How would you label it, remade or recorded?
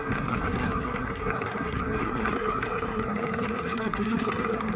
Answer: remade